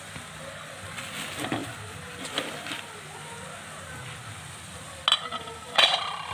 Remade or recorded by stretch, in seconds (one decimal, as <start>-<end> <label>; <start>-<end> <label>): 0.0-6.3 recorded